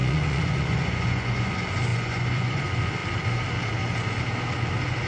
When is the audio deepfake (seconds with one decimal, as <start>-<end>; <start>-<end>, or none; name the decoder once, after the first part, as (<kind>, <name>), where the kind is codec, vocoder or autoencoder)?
0.0-1.5 (vocoder, Vocos); 1.9-2.6